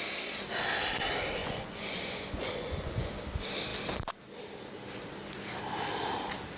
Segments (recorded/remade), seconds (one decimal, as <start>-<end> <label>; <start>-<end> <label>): 0.0-1.4 recorded; 1.4-3.1 remade; 3.1-6.6 recorded